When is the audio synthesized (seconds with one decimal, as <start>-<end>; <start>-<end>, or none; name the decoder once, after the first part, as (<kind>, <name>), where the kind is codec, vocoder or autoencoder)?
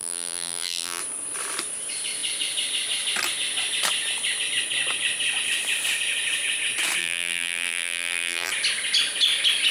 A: 0.0-1.0 (vocoder, BigVGAN v2); 7.0-8.5